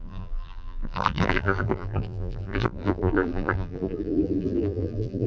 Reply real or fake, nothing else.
fake